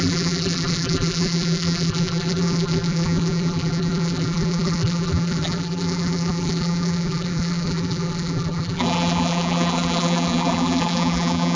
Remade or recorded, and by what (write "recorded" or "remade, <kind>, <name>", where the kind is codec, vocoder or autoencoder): remade, vocoder, BigVGAN v2